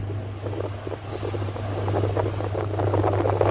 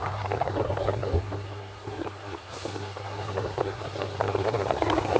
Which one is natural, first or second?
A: first